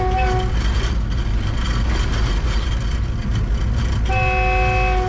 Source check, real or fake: real